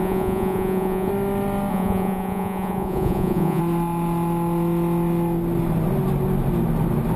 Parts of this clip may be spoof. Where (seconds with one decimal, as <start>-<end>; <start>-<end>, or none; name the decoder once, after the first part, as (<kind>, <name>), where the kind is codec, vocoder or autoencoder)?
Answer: 0.0-1.1 (vocoder, Vocos); 1.7-3.6

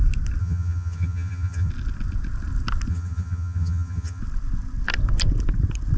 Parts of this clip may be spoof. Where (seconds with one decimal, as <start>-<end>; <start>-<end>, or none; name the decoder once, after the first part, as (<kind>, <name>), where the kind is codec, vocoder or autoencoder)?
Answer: 0.4-1.7 (vocoder, HiFi-GAN); 2.9-4.2

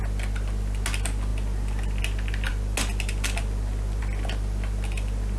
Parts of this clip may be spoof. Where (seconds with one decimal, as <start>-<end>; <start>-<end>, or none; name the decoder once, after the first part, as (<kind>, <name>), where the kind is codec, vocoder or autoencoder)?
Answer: none

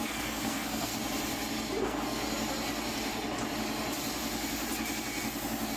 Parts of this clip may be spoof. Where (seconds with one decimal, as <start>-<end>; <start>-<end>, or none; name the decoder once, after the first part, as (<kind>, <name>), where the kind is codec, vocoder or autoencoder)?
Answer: 0.0-0.9 (codec, SNAC); 1.8-2.2

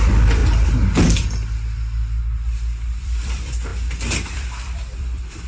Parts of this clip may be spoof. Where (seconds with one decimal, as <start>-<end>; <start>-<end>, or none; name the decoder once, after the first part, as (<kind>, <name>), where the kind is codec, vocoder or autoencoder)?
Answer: 0.0-0.4 (vocoder, BigVGAN v2); 2.2-3.7; 4.3-5.5

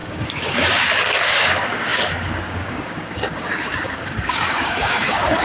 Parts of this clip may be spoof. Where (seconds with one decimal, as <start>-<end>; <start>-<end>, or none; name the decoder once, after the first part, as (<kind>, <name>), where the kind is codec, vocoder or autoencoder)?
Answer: 0.0-5.4 (codec, DAC)

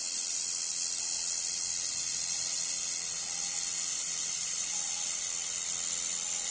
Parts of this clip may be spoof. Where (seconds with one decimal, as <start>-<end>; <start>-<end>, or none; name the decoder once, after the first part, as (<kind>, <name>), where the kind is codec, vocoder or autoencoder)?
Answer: 0.0-0.7 (vocoder, BigVGAN v2); 3.9-6.5

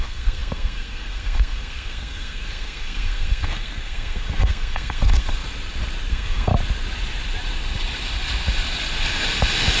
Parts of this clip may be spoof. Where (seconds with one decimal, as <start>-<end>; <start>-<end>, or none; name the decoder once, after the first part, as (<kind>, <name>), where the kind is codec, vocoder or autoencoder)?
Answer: 0.0-5.4 (codec, SNAC); 6.1-6.5